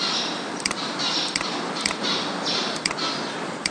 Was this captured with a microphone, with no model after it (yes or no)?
no